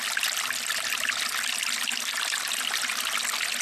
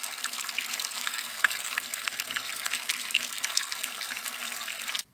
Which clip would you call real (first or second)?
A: first